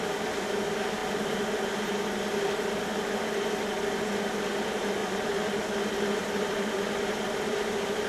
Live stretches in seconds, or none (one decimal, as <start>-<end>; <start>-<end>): 0.0-5.0; 5.6-6.2

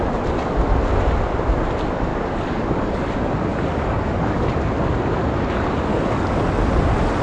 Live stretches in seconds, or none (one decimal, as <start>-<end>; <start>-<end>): 0.0-2.1; 3.1-3.5; 4.5-5.9; 6.4-7.2

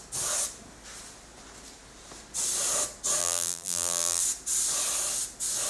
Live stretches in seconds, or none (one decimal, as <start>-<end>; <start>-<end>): 0.0-3.2; 4.2-5.7